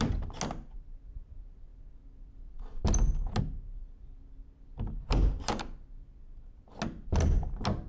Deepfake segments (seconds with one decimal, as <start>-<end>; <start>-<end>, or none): none